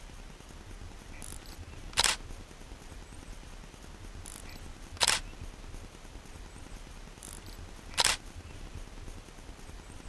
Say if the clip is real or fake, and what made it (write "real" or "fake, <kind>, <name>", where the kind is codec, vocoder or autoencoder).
real